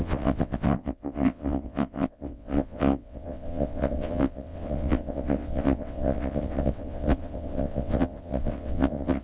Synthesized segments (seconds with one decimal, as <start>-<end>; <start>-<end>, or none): 0.0-9.2